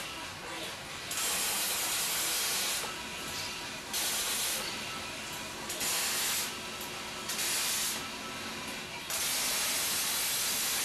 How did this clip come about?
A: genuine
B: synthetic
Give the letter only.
A